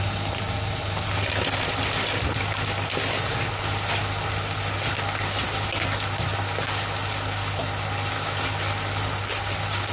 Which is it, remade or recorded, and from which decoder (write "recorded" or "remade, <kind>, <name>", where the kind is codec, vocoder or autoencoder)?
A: recorded